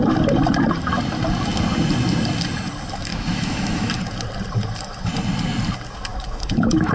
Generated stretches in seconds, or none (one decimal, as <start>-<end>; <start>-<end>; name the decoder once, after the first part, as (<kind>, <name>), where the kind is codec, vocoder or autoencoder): 3.1-3.9 (autoencoder, DAC-VAE); 6.1-6.9